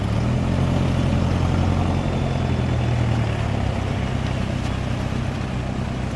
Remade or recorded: recorded